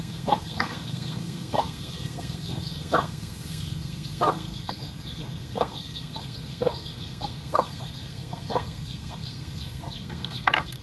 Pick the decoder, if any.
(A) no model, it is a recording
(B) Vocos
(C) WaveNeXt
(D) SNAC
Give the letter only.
D